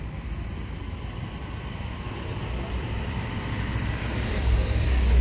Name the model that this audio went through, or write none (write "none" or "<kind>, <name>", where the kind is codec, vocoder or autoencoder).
vocoder, BigVGAN v2